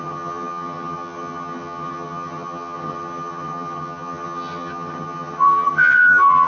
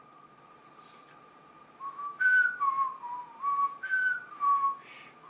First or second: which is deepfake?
first